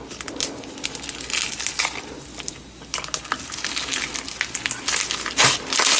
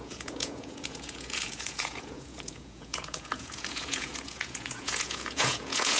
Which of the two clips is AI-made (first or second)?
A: second